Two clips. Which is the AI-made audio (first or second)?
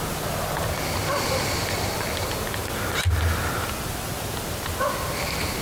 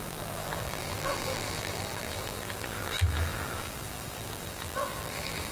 second